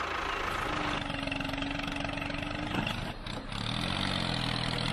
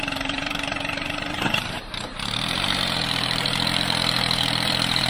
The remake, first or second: second